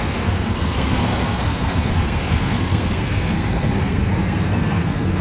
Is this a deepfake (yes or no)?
yes